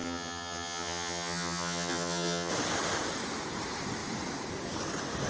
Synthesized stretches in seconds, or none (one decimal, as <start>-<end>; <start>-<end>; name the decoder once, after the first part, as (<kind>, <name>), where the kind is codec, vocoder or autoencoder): 0.0-2.5 (vocoder, HiFi-GAN)